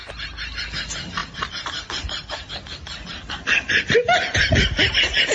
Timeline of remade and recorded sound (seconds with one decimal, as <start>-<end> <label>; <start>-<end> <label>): 0.0-5.3 recorded